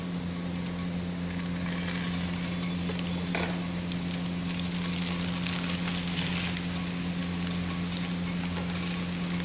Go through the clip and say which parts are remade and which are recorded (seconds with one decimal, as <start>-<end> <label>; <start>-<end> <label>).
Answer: 0.0-9.4 recorded